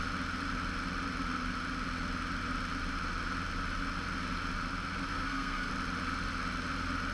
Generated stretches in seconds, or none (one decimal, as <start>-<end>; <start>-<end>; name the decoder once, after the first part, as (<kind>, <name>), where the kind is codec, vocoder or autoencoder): 5.1-5.7 (codec, SNAC)